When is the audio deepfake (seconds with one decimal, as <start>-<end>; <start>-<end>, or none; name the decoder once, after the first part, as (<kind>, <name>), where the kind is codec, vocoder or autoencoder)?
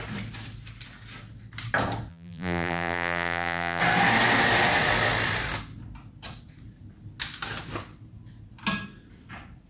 2.1-3.8 (vocoder, BigVGAN v2)